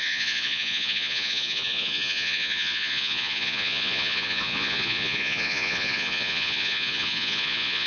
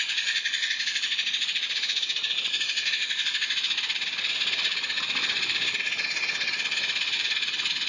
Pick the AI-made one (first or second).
first